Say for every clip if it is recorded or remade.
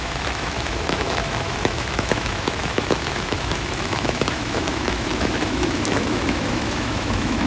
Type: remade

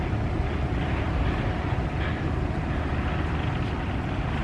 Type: recorded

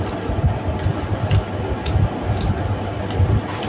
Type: recorded